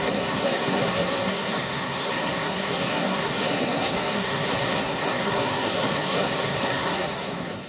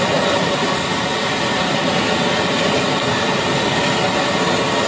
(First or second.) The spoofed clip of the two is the first